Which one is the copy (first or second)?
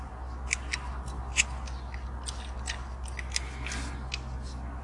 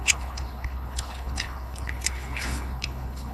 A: second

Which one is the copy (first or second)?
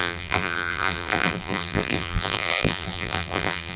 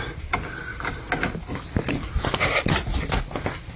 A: first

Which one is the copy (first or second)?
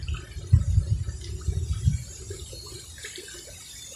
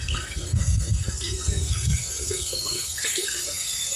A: second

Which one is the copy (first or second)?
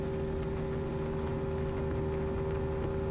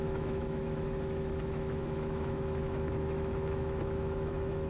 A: second